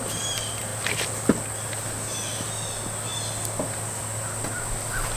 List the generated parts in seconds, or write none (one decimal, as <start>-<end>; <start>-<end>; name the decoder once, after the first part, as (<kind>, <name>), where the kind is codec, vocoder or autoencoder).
none